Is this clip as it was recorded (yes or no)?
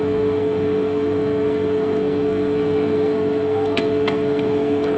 no